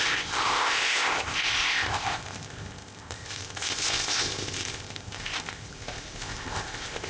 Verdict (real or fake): fake